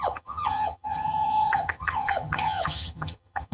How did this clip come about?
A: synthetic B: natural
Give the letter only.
A